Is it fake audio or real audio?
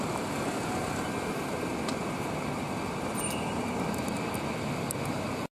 real